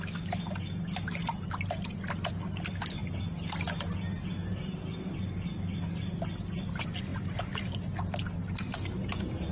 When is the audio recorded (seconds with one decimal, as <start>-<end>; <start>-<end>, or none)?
0.0-9.5